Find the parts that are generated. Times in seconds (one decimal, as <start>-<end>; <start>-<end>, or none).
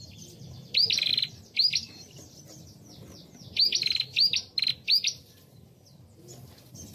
none